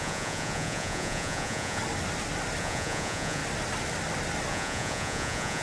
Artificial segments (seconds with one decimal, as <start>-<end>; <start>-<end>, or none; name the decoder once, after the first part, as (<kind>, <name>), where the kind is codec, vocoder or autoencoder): 0.0-1.8 (vocoder, Vocos); 2.6-3.4; 4.5-5.6